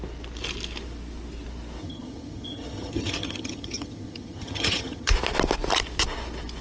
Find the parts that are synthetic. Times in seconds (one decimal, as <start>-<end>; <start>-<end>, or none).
1.8-5.1